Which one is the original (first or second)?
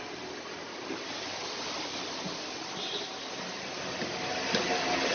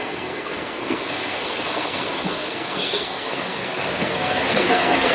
first